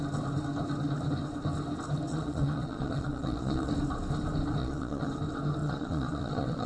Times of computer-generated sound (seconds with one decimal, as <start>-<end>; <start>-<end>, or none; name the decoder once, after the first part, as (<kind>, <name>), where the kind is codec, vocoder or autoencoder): 2.1-3.7 (vocoder, Vocos); 4.6-5.1; 5.6-6.7

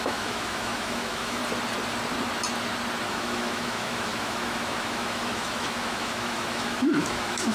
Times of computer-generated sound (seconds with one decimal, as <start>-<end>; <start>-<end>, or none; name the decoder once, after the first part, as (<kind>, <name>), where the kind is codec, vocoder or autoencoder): 0.0-1.4 (autoencoder, DAC-VAE); 3.1-7.5

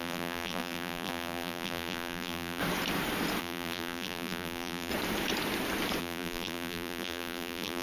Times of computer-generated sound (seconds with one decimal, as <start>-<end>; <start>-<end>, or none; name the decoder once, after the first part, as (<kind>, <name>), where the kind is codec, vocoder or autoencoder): 0.0-2.6 (vocoder, BigVGAN v2); 3.4-4.9; 6.0-7.8

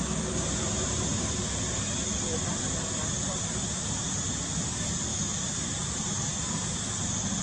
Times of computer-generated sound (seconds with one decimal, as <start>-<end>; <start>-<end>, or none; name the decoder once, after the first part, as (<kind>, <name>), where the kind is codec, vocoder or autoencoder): none

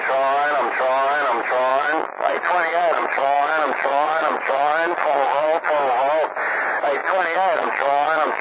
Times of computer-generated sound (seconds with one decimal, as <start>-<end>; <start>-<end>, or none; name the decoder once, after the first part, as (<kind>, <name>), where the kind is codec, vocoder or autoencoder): 1.7-5.7 (vocoder, Vocos); 7.0-8.4

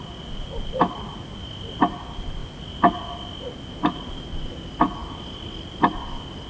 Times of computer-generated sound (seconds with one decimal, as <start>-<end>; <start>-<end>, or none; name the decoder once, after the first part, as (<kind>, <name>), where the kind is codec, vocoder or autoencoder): none

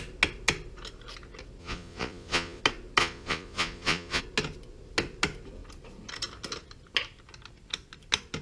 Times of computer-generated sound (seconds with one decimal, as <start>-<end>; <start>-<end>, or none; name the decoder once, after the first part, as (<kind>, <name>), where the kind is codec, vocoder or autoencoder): 1.6-2.6 (vocoder, Vocos); 3.0-4.2